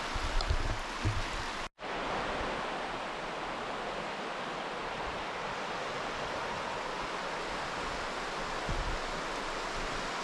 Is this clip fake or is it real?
real